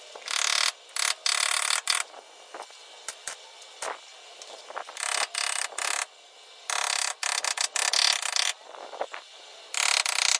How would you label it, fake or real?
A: real